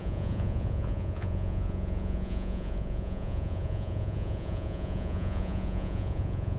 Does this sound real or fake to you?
fake